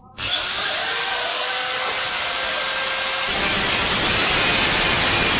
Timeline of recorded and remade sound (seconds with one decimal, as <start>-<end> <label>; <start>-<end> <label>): 0.0-1.3 recorded; 1.3-1.9 remade; 1.9-5.4 recorded